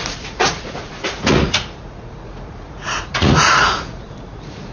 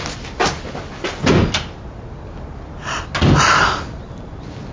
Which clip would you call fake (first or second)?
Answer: first